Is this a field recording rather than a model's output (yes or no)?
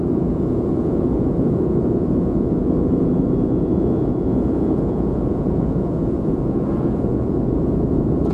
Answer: no